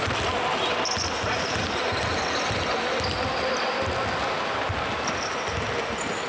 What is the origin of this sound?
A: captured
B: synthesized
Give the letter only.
A